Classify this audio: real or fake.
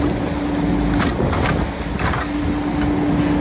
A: real